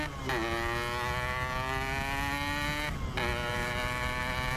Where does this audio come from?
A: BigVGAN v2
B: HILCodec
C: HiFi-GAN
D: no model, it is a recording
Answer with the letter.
D